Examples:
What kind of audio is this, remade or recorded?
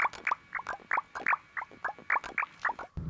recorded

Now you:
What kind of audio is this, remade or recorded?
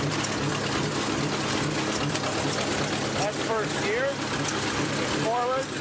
recorded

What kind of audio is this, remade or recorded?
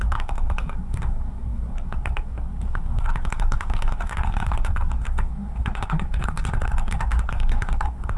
remade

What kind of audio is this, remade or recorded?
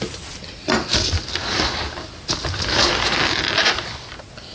recorded